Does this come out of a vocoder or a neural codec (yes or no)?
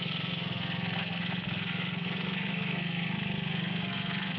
yes